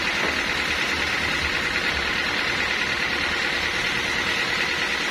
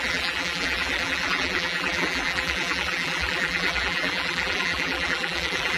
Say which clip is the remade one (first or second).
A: second